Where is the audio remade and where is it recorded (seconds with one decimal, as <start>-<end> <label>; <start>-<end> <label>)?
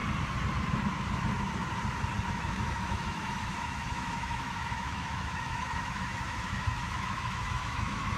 0.0-2.3 recorded; 2.3-8.2 remade